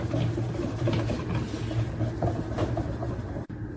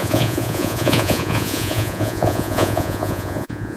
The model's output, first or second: second